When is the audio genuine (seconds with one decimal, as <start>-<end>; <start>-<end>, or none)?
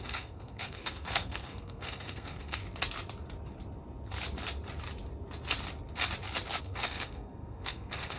2.6-6.6